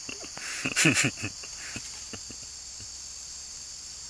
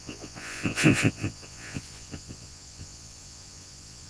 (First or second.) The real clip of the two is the first